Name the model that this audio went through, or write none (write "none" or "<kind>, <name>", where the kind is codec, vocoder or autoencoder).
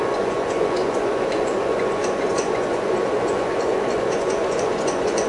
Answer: vocoder, Vocos